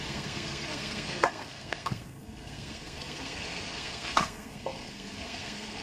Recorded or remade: remade